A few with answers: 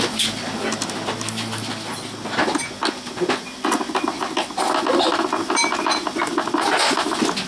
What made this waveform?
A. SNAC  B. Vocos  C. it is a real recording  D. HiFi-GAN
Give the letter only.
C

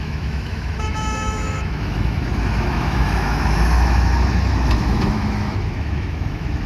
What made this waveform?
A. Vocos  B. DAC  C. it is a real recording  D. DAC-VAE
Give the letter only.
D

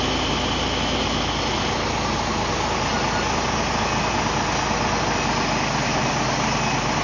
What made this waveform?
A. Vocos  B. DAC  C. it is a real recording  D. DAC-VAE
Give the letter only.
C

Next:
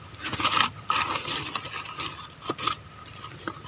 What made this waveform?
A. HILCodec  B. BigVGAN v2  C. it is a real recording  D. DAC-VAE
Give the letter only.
C